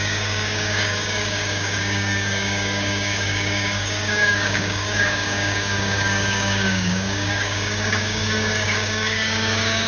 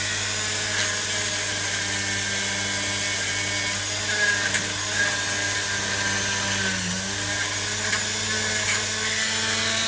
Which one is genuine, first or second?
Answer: second